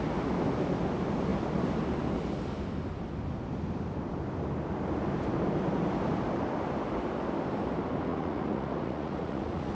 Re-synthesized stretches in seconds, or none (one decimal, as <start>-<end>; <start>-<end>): 8.1-9.7